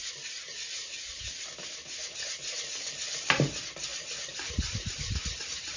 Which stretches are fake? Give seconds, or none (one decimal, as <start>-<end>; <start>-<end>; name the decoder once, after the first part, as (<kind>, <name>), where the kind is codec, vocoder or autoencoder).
none

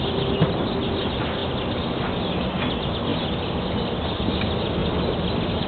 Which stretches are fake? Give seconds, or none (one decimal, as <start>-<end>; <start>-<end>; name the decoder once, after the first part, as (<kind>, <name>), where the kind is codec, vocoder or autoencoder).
none